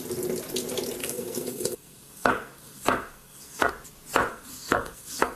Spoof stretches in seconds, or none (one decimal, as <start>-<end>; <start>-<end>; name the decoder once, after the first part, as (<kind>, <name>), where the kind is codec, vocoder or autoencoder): 1.0-3.7 (codec, SNAC); 4.3-5.4